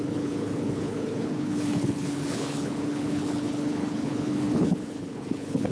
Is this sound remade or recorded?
remade